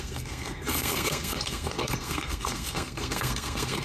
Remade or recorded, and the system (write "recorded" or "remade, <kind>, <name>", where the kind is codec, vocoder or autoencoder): remade, codec, SNAC